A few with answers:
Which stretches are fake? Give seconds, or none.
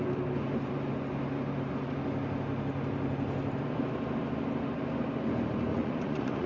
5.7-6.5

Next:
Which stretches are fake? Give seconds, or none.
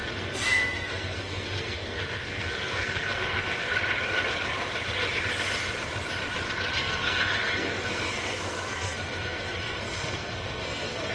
0.0-3.7; 6.8-11.1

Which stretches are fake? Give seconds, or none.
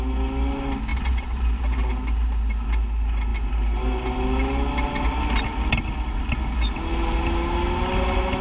0.9-1.6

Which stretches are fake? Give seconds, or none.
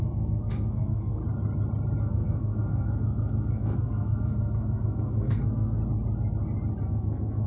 0.0-1.2; 2.0-5.8; 6.8-7.5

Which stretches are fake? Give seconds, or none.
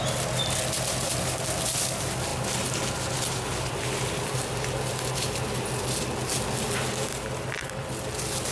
7.1-7.9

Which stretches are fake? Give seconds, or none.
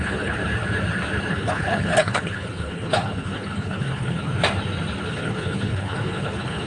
0.0-0.4; 1.3-4.3; 5.1-6.7